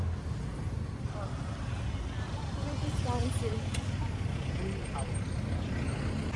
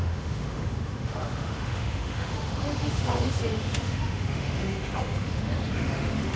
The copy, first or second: second